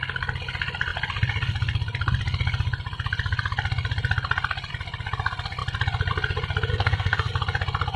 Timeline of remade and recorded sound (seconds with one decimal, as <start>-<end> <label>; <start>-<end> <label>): 0.0-6.7 recorded; 6.7-7.3 remade; 7.3-8.0 recorded